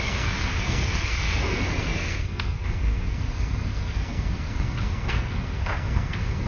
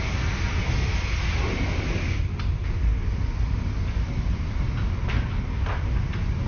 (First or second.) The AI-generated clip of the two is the first